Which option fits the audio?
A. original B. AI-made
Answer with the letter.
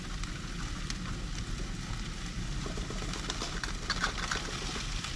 A